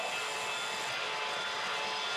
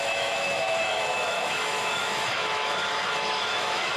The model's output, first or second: second